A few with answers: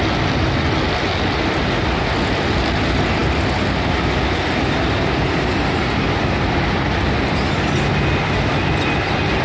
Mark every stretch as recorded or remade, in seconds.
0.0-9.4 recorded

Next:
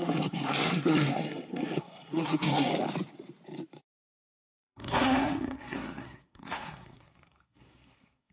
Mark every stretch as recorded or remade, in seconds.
0.0-2.7 remade; 2.7-3.8 recorded; 3.8-8.3 remade

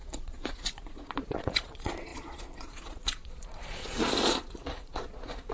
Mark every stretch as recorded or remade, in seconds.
0.0-5.5 remade